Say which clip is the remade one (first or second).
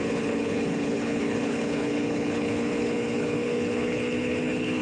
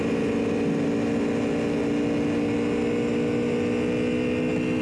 first